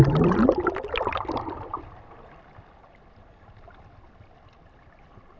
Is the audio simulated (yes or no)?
no